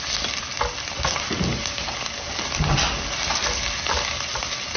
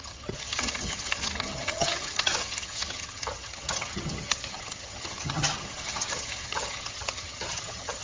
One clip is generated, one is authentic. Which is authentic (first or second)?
first